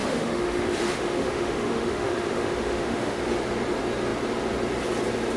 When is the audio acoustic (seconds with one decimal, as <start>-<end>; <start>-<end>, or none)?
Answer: 3.2-5.4